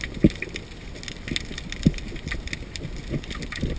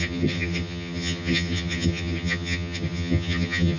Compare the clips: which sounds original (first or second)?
first